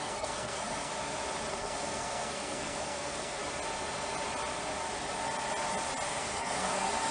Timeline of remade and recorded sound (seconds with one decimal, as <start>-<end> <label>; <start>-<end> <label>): 0.0-0.9 remade; 0.9-1.5 recorded; 1.5-3.4 remade; 3.4-6.2 recorded; 6.2-7.1 remade